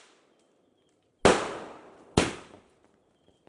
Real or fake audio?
real